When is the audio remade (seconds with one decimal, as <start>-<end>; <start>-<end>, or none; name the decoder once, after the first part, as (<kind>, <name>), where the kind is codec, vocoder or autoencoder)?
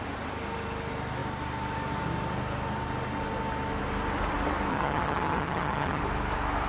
4.7-6.0 (vocoder, HiFi-GAN)